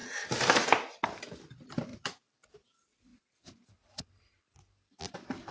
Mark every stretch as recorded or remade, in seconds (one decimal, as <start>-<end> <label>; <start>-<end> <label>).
0.0-1.3 remade; 1.3-1.9 recorded; 1.9-2.5 remade; 2.5-3.1 recorded; 3.1-4.2 remade; 4.2-5.5 recorded